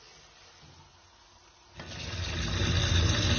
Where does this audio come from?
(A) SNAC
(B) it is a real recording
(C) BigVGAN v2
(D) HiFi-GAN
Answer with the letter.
B